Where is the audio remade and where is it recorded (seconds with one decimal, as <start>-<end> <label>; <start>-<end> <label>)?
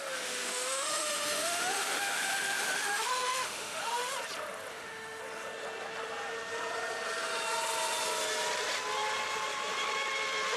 0.0-4.1 remade; 4.1-4.7 recorded; 4.7-5.2 remade; 5.2-10.6 recorded